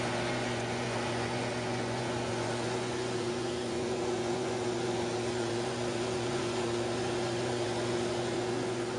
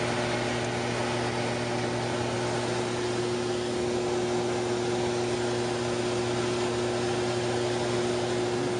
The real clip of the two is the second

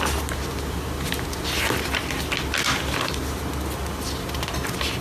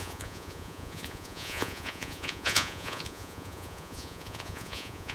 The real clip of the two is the first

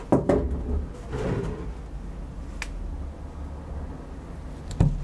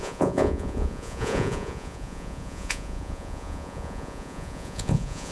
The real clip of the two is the first